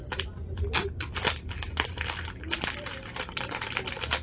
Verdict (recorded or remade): recorded